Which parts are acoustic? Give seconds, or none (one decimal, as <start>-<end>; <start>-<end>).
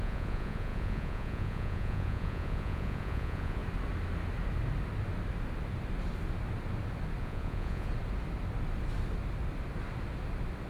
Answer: 3.6-7.2; 7.9-10.7